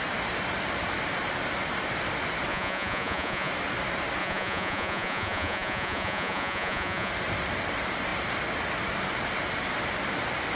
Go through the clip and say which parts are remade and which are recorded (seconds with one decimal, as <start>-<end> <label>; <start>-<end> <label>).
0.0-2.5 recorded; 2.5-3.5 remade; 3.5-4.2 recorded; 4.2-7.1 remade; 7.1-10.6 recorded